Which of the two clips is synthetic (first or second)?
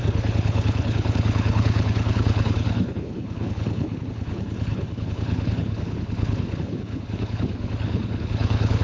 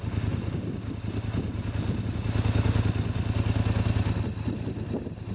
first